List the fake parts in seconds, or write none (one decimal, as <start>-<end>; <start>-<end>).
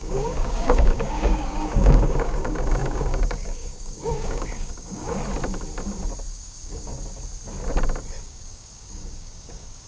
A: 0.0-5.2; 6.3-6.9; 8.2-9.9